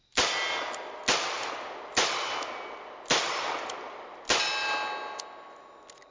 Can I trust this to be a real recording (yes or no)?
yes